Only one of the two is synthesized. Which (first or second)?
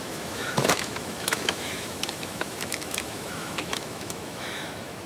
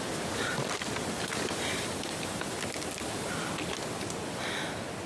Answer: first